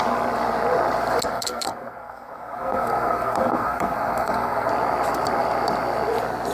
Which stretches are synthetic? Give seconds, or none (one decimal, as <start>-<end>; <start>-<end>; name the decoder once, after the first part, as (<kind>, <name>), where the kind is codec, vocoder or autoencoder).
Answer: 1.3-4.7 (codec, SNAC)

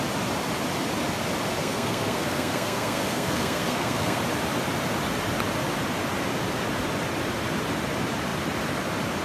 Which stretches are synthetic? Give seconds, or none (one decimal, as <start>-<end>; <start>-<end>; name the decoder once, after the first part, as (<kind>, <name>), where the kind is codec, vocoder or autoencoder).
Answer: 1.6-4.2 (codec, SNAC)

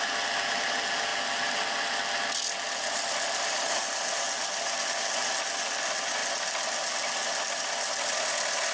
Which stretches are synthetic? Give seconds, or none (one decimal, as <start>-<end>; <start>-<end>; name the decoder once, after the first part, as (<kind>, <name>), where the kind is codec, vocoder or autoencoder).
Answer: none

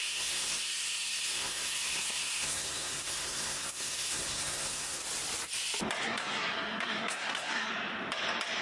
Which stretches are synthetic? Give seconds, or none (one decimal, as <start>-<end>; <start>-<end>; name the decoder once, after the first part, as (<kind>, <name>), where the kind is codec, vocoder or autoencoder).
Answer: 0.0-5.0 (codec, SNAC); 6.0-7.7